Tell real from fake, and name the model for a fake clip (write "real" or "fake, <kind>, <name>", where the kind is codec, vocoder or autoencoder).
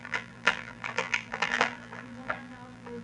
fake, vocoder, BigVGAN v2